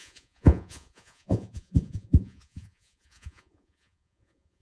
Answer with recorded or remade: remade